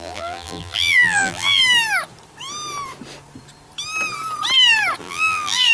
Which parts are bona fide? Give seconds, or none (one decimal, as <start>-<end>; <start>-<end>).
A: 1.6-5.0